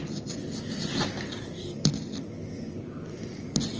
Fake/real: real